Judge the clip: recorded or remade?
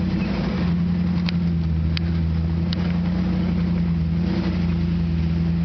recorded